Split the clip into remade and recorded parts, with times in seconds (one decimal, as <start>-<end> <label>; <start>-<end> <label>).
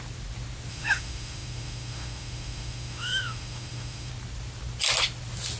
0.0-0.7 recorded; 0.7-4.1 remade; 4.1-5.6 recorded